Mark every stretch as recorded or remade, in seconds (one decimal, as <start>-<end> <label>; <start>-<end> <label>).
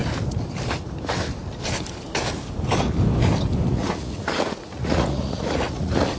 0.0-3.7 recorded; 3.7-6.2 remade